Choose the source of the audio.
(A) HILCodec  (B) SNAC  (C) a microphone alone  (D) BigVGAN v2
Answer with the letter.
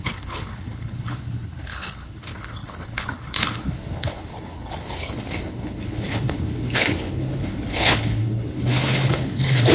A